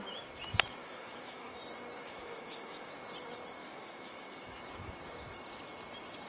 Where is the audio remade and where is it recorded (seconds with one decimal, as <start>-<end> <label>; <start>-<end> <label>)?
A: 0.0-0.8 recorded; 0.8-1.6 remade; 1.6-2.0 recorded; 2.0-2.9 remade; 2.9-3.6 recorded; 3.6-4.6 remade; 4.6-6.3 recorded